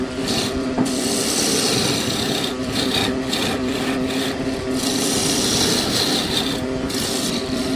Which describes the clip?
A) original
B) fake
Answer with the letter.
A